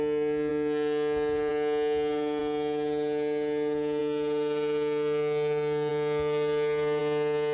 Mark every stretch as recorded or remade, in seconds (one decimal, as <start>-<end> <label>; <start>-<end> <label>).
0.0-7.5 recorded